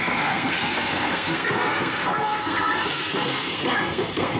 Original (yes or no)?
no